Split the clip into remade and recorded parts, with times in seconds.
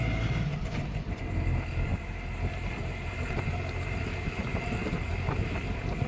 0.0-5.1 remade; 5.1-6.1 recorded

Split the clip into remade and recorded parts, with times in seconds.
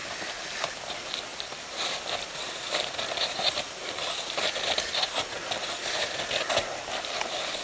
0.0-7.6 recorded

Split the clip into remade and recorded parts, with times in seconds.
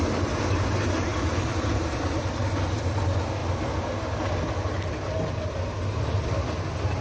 0.0-7.0 recorded